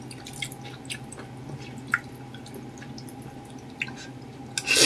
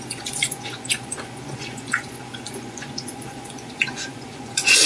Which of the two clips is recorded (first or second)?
first